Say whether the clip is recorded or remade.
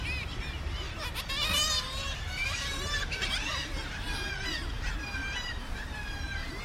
remade